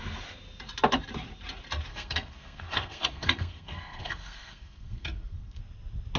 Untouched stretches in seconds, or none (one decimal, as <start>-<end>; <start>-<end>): 0.0-1.9; 5.6-6.2